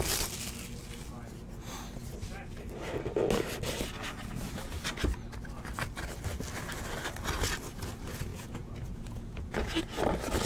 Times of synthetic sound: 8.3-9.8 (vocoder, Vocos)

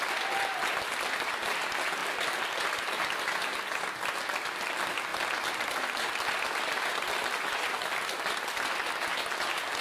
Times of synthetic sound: none